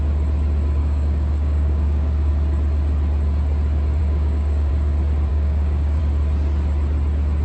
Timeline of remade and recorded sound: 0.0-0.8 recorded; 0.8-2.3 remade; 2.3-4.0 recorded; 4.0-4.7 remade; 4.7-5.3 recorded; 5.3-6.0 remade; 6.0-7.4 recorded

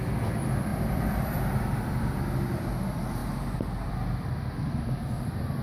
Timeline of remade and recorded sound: 0.0-0.7 recorded; 0.7-2.0 remade; 2.0-5.6 recorded